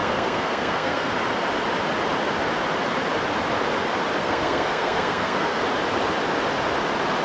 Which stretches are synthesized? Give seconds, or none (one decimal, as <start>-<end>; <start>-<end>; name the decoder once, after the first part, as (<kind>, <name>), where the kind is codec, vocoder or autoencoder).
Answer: 0.0-1.1 (codec, SNAC); 4.2-5.6